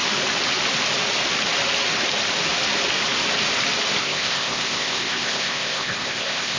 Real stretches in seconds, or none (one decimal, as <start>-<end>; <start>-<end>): 0.0-4.0